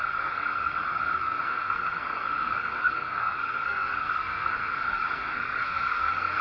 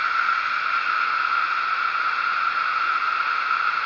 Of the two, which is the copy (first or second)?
first